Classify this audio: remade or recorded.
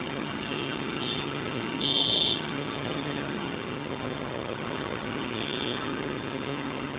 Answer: remade